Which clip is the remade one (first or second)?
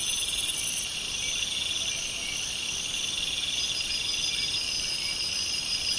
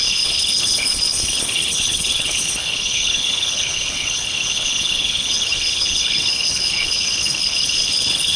second